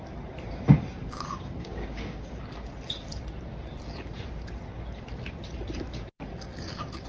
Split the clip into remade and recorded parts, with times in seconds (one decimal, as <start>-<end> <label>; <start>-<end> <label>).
0.0-1.0 recorded; 1.0-2.4 remade; 2.4-7.1 recorded